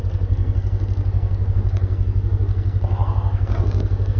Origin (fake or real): fake